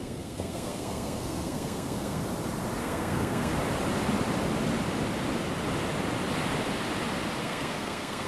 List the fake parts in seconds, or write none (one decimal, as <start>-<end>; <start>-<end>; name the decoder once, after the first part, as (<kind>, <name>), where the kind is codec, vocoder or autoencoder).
0.0-2.2 (codec, SNAC); 2.8-3.5; 7.4-8.3

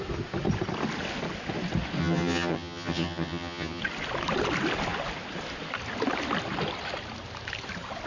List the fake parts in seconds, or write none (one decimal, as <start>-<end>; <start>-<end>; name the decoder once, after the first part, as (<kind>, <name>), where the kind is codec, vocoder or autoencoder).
2.0-3.8 (vocoder, HiFi-GAN)

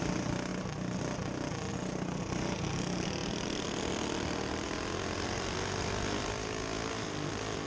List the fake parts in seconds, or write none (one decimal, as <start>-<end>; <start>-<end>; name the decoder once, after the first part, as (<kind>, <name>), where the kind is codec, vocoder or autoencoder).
3.2-7.3 (vocoder, BigVGAN v2)

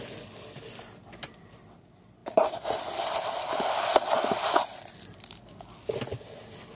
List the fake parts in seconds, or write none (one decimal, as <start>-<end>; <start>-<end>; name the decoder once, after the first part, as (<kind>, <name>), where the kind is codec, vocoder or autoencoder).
2.2-4.8 (vocoder, BigVGAN v2)

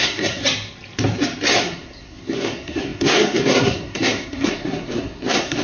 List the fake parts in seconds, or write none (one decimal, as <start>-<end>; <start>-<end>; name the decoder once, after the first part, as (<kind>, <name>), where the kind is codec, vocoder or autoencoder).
0.0-0.4 (codec, SNAC); 1.6-5.6